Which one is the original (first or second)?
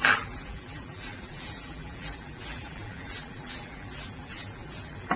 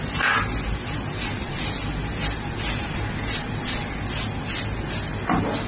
second